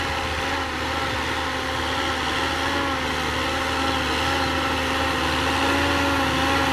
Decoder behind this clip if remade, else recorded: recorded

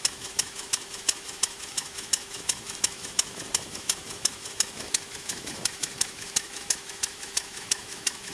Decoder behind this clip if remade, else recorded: remade, autoencoder, DAC-VAE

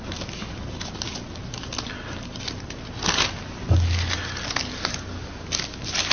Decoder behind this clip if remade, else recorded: recorded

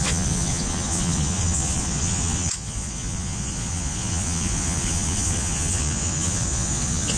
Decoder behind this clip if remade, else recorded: remade, vocoder, Vocos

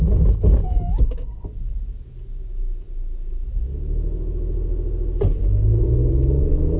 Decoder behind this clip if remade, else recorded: recorded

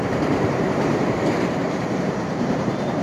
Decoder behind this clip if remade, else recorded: remade, vocoder, BigVGAN v2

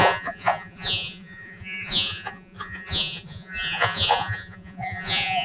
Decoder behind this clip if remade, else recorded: remade, vocoder, Vocos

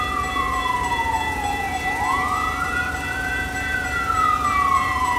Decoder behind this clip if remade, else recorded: remade, vocoder, BigVGAN v2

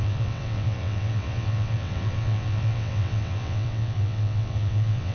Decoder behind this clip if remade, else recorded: remade, vocoder, WaveNeXt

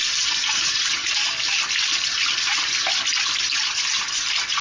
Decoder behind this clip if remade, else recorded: recorded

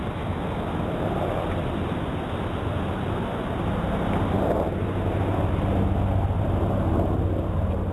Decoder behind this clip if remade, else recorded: recorded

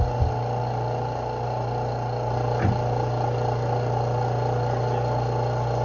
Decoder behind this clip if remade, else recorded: recorded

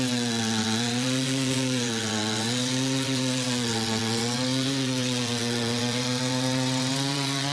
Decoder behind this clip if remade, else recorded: remade, vocoder, WaveNeXt